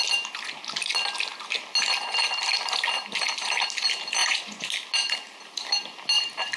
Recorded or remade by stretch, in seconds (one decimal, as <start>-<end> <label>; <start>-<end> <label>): 0.0-4.2 recorded; 4.2-4.7 remade; 4.7-6.6 recorded